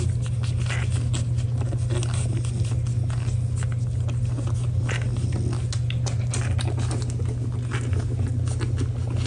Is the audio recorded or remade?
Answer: recorded